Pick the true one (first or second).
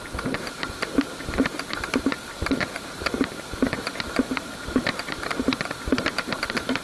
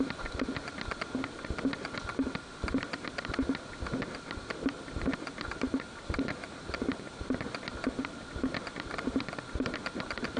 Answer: second